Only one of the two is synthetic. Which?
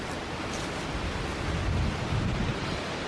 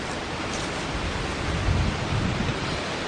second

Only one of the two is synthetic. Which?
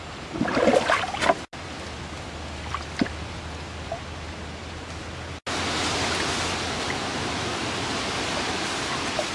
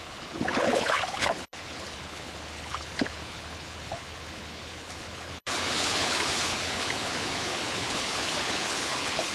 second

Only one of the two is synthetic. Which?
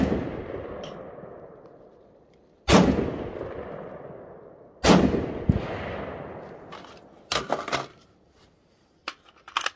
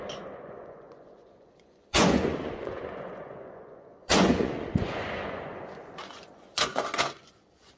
second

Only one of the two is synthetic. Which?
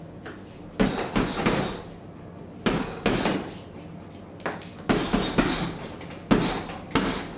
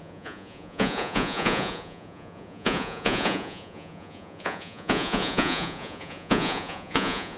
second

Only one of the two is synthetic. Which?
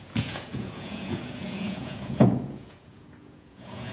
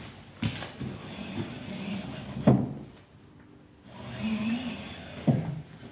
first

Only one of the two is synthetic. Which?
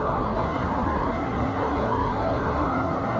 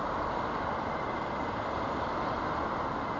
first